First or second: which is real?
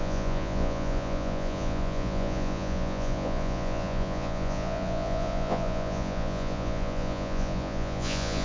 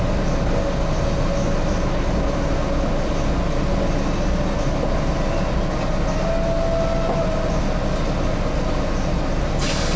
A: second